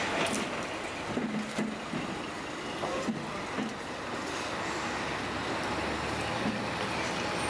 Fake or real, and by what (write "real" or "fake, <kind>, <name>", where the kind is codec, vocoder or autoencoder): real